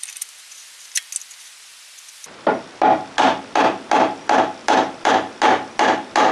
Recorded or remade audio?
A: recorded